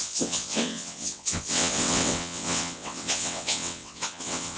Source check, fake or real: fake